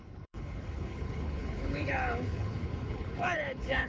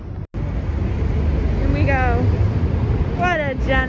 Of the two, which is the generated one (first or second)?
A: first